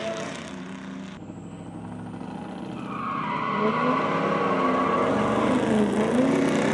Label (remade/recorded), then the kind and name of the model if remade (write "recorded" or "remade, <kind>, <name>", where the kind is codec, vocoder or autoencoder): recorded